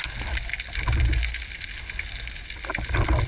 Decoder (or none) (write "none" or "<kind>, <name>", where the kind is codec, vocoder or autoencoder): none